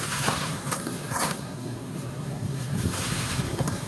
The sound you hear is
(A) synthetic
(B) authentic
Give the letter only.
A